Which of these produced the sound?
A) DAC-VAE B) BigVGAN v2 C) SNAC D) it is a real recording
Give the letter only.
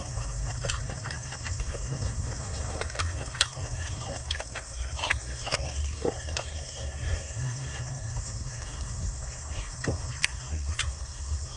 C